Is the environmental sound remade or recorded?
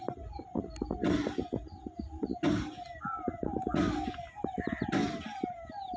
recorded